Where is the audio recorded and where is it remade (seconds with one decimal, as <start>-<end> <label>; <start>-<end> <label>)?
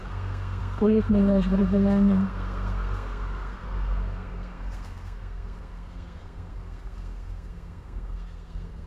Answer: 0.0-8.9 remade